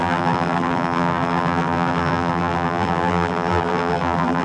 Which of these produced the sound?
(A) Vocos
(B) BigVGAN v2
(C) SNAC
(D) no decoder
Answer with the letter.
B